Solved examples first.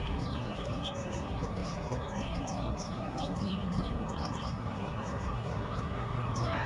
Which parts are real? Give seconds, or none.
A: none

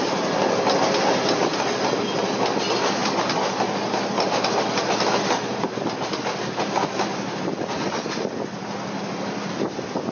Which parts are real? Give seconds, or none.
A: 0.0-10.1

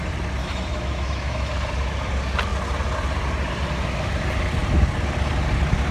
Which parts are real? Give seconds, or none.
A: 0.0-0.4; 1.5-5.9

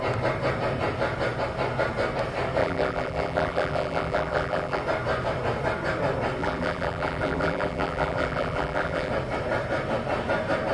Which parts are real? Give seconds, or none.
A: 0.0-2.6; 4.8-6.4; 9.1-10.7

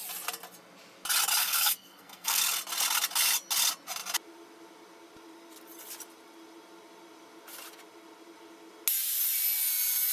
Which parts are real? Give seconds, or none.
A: 0.0-1.4; 2.4-10.1

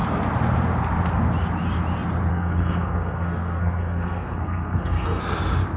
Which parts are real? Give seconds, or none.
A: 0.0-2.3; 5.2-5.8

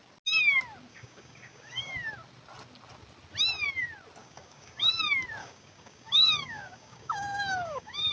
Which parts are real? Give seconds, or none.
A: 0.0-0.9; 1.9-4.2; 5.0-5.4

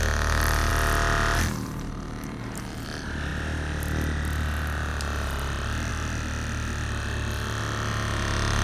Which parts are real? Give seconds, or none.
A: 0.0-8.6